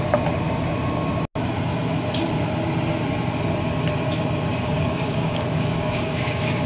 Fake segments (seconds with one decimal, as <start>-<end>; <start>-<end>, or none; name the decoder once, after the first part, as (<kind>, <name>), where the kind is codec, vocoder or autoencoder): 4.5-6.7 (codec, DAC)

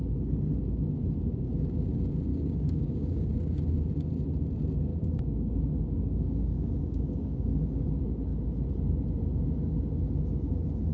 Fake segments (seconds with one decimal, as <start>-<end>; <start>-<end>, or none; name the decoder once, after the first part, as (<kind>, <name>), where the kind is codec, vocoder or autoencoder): 2.3-3.3 (codec, DAC); 4.9-7.9

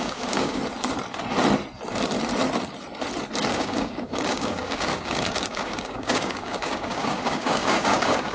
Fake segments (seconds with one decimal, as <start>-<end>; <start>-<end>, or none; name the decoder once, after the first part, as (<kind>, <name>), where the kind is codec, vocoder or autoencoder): 0.0-0.6 (codec, DAC); 3.5-8.3

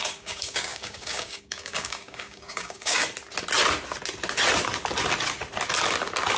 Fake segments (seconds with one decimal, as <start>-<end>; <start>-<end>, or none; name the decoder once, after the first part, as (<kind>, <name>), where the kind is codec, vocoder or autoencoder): 0.0-3.0 (codec, DAC)

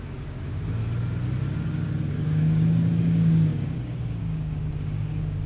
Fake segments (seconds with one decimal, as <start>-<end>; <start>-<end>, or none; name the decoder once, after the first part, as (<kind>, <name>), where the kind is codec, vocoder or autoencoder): 0.0-0.8 (codec, DAC); 2.1-5.5

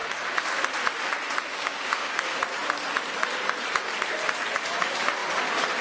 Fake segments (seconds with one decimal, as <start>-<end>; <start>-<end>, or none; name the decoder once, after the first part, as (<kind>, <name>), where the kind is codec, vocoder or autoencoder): 1.5-2.2 (codec, DAC)